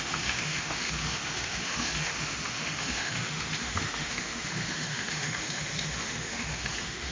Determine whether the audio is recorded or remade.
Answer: remade